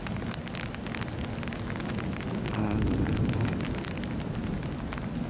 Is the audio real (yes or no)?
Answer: yes